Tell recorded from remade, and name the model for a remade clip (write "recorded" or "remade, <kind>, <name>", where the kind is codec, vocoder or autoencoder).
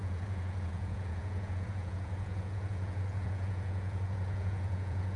remade, vocoder, Vocos